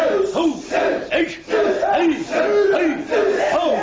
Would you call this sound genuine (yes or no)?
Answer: yes